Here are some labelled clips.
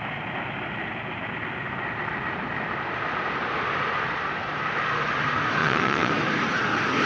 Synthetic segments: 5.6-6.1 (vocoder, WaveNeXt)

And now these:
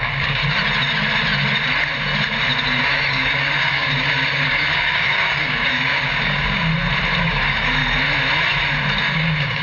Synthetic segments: 0.0-0.4 (codec, DAC); 2.8-6.7; 7.2-7.8; 9.0-9.6

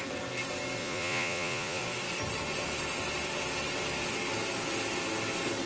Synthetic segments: 0.8-1.8 (vocoder, Vocos)

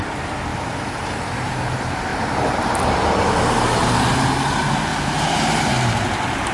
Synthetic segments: 2.1-4.4 (vocoder, BigVGAN v2); 4.9-5.7

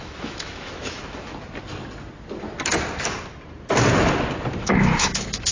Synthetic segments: 0.0-1.3 (autoencoder, DAC-VAE); 4.6-5.5

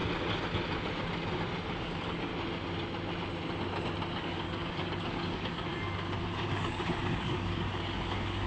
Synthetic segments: 1.8-2.3 (codec, DAC); 4.2-5.7; 6.2-8.5

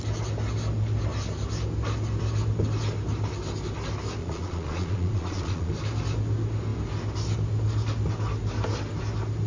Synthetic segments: 4.2-5.7 (vocoder, Vocos)